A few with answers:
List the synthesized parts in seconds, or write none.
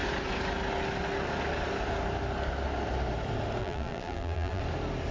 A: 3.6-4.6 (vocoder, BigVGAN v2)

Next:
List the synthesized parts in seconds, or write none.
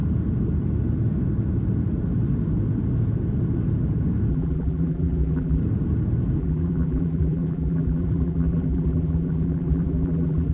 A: 4.3-5.6 (vocoder, BigVGAN v2); 6.4-10.5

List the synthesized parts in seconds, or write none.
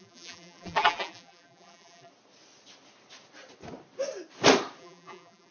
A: 0.0-2.1 (vocoder, BigVGAN v2); 4.8-5.5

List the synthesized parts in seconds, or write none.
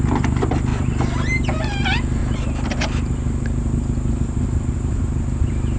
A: 0.7-1.4 (vocoder, BigVGAN v2); 2.2-5.8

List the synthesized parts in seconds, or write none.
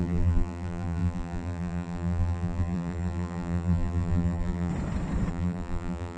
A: 0.0-4.7 (vocoder, BigVGAN v2); 5.3-6.2